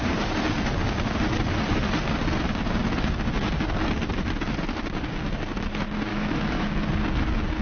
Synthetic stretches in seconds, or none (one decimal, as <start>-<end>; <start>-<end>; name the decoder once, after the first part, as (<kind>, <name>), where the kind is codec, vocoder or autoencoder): 6.1-6.8 (autoencoder, DAC-VAE)